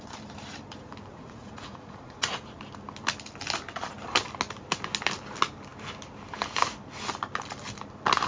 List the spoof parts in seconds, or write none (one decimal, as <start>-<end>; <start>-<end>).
1.1-2.6